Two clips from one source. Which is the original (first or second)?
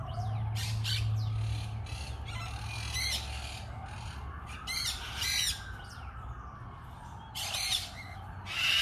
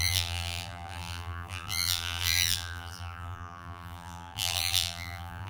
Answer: first